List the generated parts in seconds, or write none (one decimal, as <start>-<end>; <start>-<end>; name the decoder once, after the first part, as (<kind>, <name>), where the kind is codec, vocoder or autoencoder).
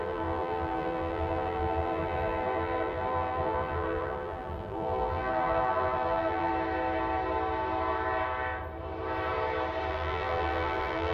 0.0-6.5 (vocoder, BigVGAN v2); 9.9-11.1